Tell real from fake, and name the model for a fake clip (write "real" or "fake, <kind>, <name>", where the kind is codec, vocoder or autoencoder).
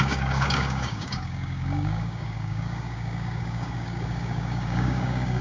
fake, codec, DAC